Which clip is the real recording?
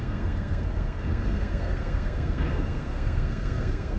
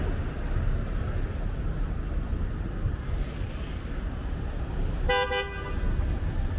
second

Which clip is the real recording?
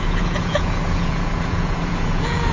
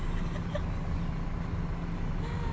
second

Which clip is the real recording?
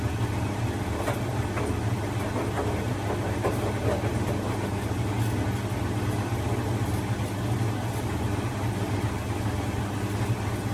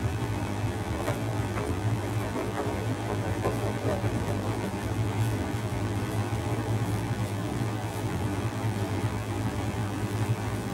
first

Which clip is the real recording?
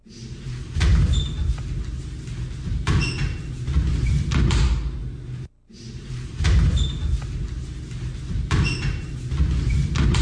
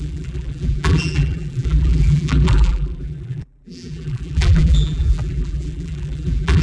first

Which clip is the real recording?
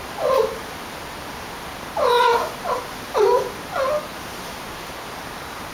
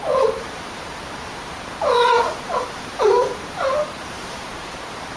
first